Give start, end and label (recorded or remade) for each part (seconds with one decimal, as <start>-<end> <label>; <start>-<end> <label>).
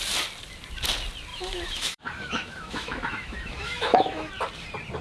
0.0-1.3 recorded; 1.3-4.3 remade; 4.3-5.0 recorded